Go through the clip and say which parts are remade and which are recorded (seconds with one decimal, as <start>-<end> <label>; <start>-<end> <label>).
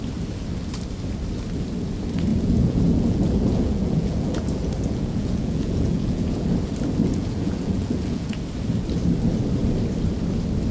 0.0-2.3 recorded; 2.3-6.5 remade; 6.5-7.0 recorded; 7.0-8.4 remade; 8.4-10.7 recorded